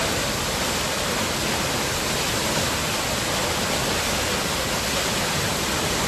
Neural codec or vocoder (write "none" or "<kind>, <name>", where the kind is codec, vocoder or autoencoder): none